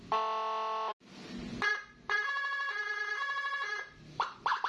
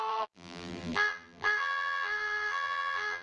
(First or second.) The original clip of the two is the first